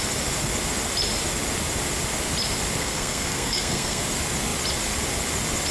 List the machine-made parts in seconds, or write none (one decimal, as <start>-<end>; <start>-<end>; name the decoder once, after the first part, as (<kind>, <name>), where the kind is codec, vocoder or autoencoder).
2.8-4.0 (codec, SNAC)